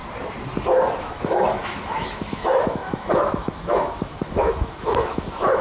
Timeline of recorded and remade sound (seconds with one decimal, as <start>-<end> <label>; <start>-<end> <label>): 0.0-1.0 recorded; 1.0-5.6 remade